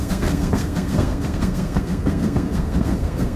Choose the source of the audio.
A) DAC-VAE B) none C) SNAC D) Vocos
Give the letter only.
C